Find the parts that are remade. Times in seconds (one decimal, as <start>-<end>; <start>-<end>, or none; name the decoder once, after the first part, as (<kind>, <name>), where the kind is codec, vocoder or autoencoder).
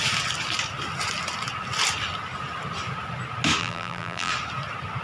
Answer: 3.6-4.3 (vocoder, BigVGAN v2)